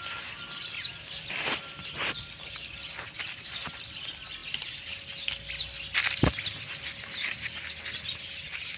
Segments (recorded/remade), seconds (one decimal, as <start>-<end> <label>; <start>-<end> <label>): 0.0-8.8 recorded